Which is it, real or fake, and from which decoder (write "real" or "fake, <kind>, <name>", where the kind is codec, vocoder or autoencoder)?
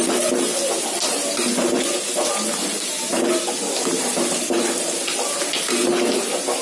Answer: real